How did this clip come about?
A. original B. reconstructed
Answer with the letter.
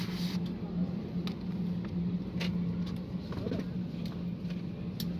A